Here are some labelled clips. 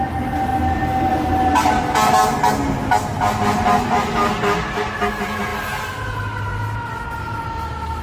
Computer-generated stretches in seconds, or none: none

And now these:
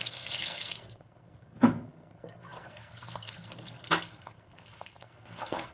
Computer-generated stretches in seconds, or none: 0.0-5.7 (codec, SNAC)

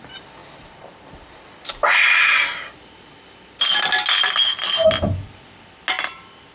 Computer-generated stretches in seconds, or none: none

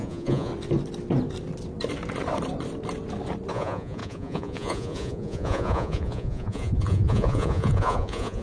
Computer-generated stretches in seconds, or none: 0.0-0.5 (vocoder, Vocos); 3.5-8.4

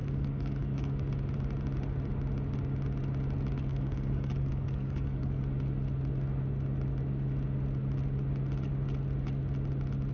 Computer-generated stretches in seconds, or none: 0.0-1.0 (codec, DAC); 3.7-5.4

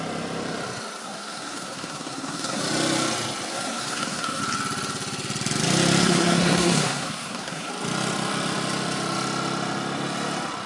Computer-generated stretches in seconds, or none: 1.0-2.6 (codec, SNAC); 3.5-4.4; 6.0-7.7

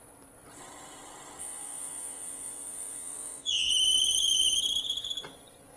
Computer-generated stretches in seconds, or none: 1.4-3.7 (vocoder, Vocos)